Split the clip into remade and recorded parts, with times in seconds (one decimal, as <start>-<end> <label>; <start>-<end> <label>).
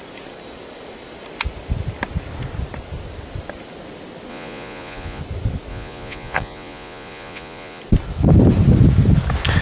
0.0-4.3 recorded; 4.3-5.2 remade; 5.2-5.7 recorded; 5.7-7.8 remade; 7.8-9.6 recorded